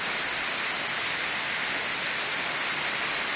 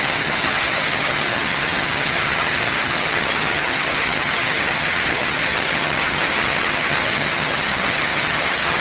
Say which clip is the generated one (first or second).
second